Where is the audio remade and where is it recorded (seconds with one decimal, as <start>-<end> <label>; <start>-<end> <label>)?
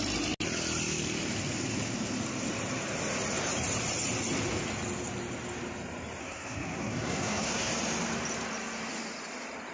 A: 0.0-6.2 recorded; 6.2-7.7 remade; 7.7-9.7 recorded